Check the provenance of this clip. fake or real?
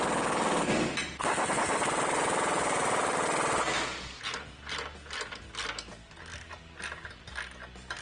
real